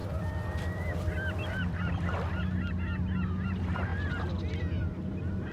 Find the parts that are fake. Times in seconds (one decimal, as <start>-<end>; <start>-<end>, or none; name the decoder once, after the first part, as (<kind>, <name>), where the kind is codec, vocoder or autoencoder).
0.0-2.8 (vocoder, BigVGAN v2)